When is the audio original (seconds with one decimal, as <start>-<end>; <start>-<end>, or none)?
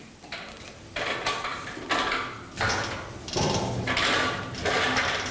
1.1-1.5; 2.7-5.3